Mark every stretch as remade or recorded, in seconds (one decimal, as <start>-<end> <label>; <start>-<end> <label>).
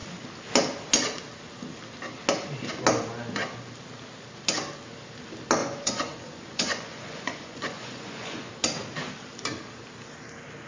0.0-5.6 recorded; 5.6-8.5 remade; 8.5-10.7 recorded